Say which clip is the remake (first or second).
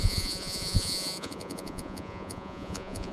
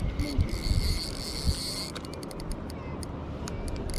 first